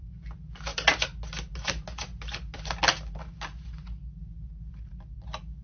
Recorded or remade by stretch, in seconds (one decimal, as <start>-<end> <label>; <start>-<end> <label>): 0.0-5.6 recorded